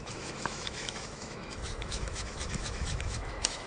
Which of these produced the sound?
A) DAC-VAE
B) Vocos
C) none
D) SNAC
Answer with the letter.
A